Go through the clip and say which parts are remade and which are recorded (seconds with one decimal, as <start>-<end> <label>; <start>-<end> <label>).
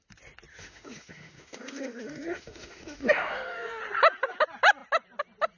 0.0-0.5 recorded; 0.5-3.8 remade; 3.8-5.6 recorded